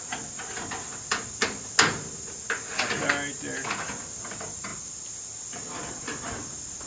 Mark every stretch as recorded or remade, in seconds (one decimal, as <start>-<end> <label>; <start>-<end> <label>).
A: 0.0-6.9 recorded